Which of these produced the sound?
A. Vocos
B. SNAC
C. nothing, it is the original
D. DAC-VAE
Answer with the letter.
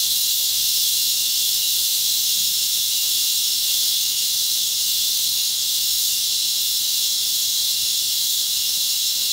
D